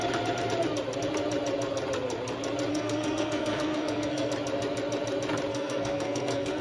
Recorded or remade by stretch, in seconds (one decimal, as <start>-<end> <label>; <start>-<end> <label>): 0.0-2.7 recorded; 2.7-4.3 remade; 4.3-5.5 recorded; 5.5-6.6 remade